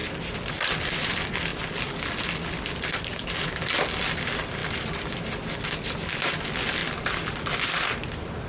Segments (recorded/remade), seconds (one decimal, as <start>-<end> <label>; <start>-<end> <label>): 0.0-8.5 recorded